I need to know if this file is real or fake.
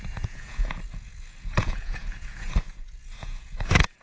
fake